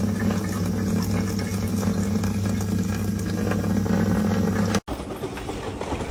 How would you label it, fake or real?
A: real